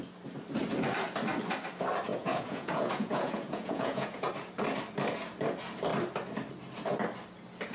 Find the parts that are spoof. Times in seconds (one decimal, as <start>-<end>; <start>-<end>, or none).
2.1-4.3